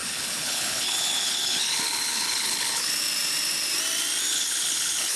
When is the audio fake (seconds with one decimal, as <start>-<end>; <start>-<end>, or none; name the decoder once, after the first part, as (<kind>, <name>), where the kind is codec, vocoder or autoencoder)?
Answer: 0.0-2.9 (codec, HILCodec); 4.3-5.2